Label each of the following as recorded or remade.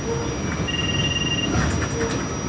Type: recorded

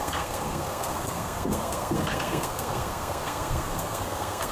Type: remade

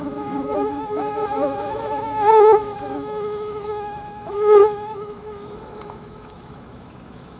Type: remade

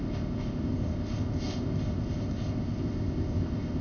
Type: remade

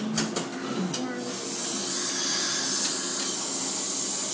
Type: recorded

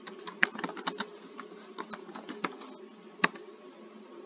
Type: recorded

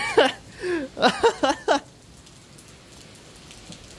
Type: recorded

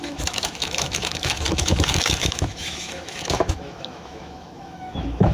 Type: remade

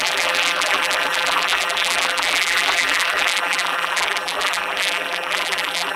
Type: remade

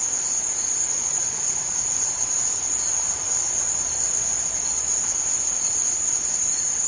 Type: remade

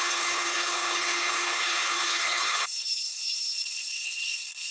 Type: remade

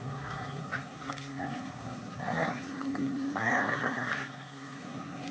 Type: remade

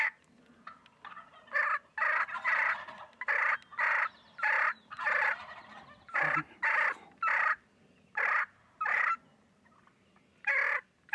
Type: recorded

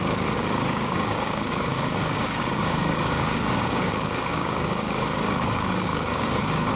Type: remade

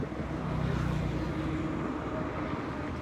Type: recorded